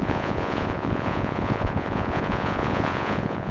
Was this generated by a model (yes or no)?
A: yes